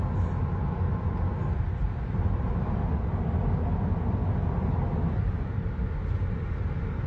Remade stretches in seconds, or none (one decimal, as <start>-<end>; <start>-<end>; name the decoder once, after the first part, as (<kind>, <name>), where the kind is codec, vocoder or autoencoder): none